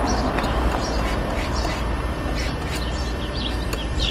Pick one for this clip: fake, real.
fake